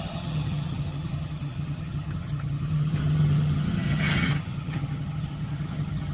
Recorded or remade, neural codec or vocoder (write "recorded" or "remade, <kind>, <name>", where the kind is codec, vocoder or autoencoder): remade, vocoder, HiFi-GAN